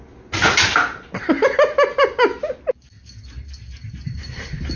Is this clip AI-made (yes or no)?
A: no